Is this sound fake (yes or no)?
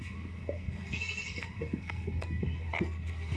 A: yes